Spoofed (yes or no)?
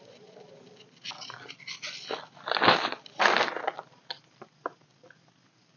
no